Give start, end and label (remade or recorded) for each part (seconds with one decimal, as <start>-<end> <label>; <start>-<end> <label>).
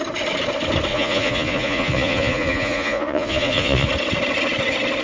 0.0-0.9 recorded; 0.9-3.9 remade; 3.9-5.0 recorded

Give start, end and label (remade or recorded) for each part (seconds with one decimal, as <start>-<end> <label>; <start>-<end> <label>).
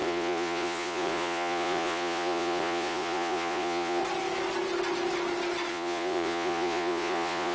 0.0-4.0 remade; 4.0-5.7 recorded; 5.7-7.5 remade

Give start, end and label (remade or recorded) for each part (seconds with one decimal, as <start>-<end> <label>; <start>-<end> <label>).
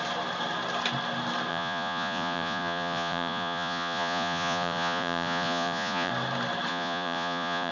0.0-1.5 recorded; 1.5-6.1 remade; 6.1-6.7 recorded; 6.7-7.7 remade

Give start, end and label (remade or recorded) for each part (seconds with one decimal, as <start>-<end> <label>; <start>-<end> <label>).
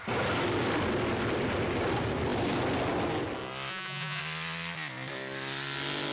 0.0-3.7 recorded; 3.7-4.2 remade; 4.2-6.1 recorded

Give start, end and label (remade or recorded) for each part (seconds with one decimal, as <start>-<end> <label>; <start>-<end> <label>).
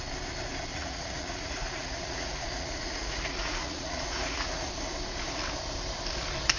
0.0-0.7 recorded; 0.7-4.7 remade; 4.7-6.6 recorded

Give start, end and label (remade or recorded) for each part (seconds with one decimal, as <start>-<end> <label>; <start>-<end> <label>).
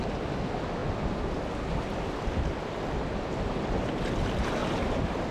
0.0-5.3 recorded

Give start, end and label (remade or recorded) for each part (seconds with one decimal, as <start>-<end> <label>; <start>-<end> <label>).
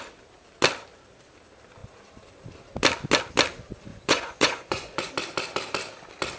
0.0-3.9 recorded; 3.9-5.1 remade; 5.1-6.4 recorded